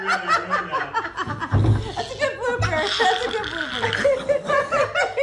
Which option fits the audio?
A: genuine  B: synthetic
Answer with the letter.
A